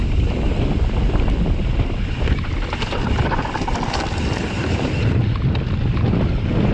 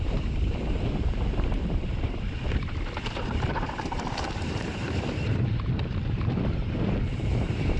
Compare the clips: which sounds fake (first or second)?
second